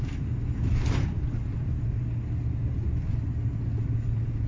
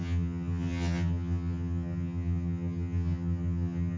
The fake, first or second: second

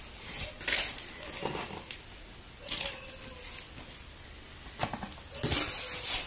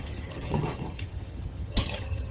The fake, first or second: second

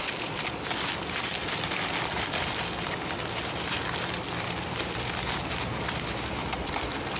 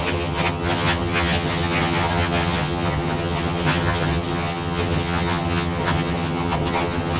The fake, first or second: second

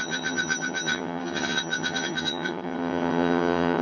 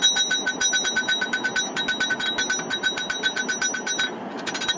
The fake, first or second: first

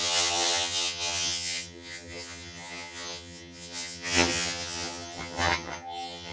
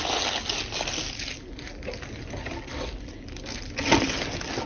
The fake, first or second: first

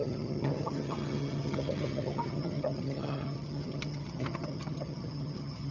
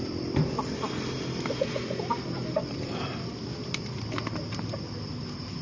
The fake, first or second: first